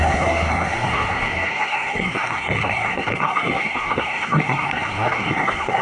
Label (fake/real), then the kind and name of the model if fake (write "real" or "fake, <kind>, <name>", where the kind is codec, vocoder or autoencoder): fake, codec, SNAC